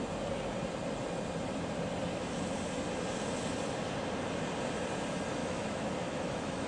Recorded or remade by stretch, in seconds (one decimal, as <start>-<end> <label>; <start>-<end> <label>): 0.0-5.4 recorded; 5.4-6.7 remade